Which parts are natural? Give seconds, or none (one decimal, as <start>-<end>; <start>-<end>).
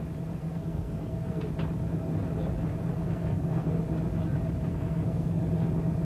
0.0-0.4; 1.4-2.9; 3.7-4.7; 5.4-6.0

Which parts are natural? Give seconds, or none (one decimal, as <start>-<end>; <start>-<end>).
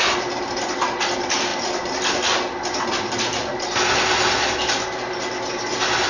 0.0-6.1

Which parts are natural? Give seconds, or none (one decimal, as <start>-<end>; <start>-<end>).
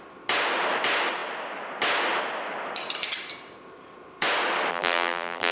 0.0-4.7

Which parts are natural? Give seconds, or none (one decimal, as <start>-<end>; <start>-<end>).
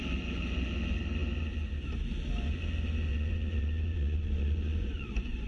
0.0-3.1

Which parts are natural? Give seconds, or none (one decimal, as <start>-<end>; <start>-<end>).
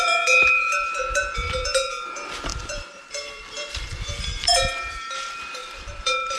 none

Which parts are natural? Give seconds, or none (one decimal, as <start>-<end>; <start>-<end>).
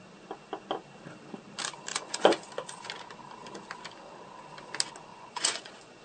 0.0-1.9; 2.5-5.1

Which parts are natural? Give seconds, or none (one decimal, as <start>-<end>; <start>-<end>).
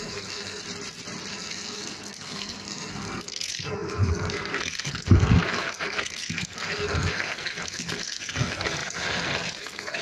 0.6-1.3